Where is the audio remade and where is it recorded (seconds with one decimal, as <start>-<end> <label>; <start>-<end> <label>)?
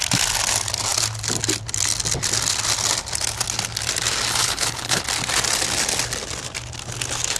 0.0-4.4 recorded; 4.4-5.0 remade; 5.0-7.4 recorded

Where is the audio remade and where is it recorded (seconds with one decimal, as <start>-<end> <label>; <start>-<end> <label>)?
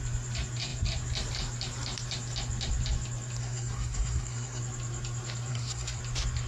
0.0-3.4 recorded; 3.4-4.6 remade; 4.6-5.5 recorded; 5.5-6.0 remade; 6.0-6.5 recorded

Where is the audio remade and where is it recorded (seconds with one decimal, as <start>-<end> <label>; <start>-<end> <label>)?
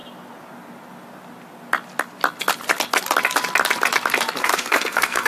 0.0-4.4 recorded; 4.4-5.3 remade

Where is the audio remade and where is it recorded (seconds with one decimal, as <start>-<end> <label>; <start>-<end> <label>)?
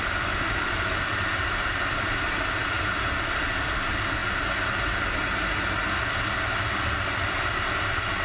0.0-2.6 remade; 2.6-3.6 recorded; 3.6-4.2 remade; 4.2-7.1 recorded; 7.1-8.2 remade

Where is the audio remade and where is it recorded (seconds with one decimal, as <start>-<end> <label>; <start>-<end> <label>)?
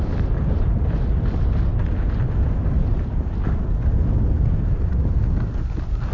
0.0-6.1 recorded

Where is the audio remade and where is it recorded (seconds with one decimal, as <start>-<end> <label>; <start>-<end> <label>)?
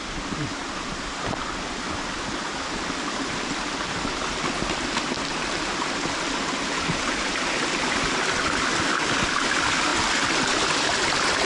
0.0-11.5 recorded